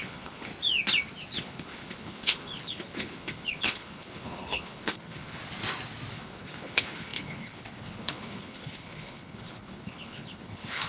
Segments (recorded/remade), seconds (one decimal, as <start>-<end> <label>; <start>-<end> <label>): 0.0-0.5 remade; 0.5-1.4 recorded; 1.4-5.4 remade; 5.4-6.1 recorded; 6.1-10.9 remade